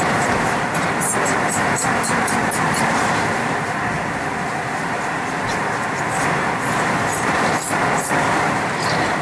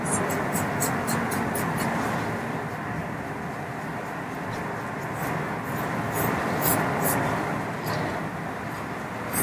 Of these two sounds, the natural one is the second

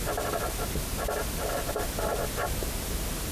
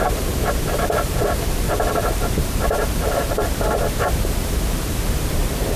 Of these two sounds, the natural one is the first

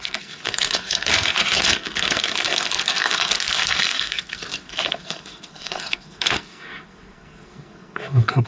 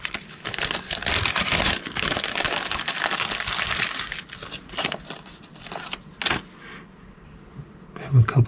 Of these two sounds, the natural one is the second